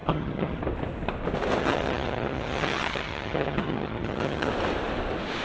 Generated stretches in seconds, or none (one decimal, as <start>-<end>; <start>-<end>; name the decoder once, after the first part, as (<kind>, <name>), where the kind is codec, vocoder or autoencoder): 0.0-0.6 (vocoder, HiFi-GAN); 1.6-4.5